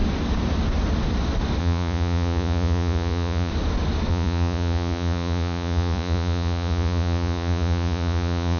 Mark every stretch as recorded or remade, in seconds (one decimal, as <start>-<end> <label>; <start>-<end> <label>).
0.0-1.6 recorded; 1.6-3.5 remade; 3.5-4.1 recorded; 4.1-8.6 remade